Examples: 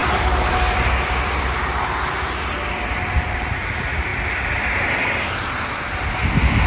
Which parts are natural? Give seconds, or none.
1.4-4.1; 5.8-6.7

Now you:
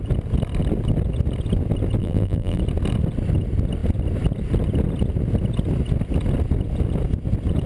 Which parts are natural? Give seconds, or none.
0.0-2.0; 2.6-7.7